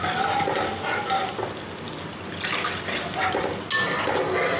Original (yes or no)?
yes